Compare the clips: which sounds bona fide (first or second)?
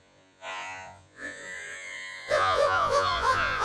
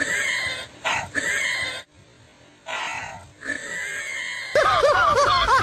second